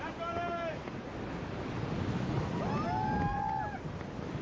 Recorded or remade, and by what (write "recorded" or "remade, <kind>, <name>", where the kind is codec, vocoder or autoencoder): recorded